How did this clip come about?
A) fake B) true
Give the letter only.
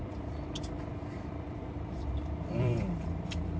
A